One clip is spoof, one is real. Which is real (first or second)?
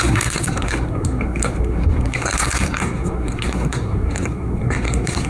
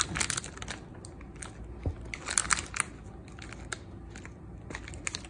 second